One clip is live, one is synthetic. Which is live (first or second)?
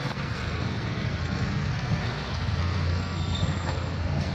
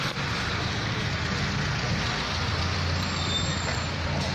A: second